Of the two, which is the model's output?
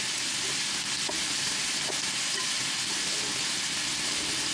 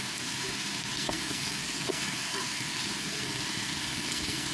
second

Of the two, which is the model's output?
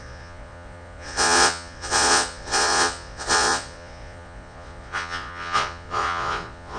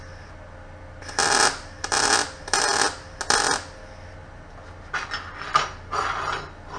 first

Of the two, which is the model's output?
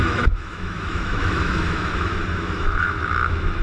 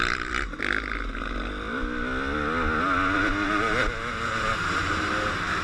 first